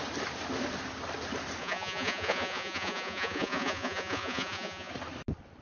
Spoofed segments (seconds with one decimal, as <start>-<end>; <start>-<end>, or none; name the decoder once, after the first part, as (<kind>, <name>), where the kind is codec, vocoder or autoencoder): 1.6-4.9 (vocoder, Vocos)